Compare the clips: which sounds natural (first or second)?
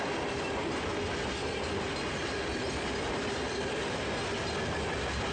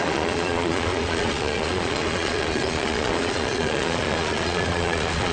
first